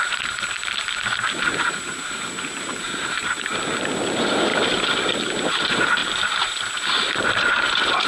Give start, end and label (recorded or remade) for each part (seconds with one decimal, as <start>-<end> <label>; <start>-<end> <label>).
0.0-0.6 remade; 0.6-1.7 recorded; 1.7-4.5 remade; 4.5-5.2 recorded; 5.2-8.1 remade